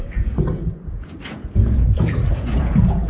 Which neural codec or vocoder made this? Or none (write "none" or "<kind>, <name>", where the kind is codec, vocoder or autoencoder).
vocoder, Vocos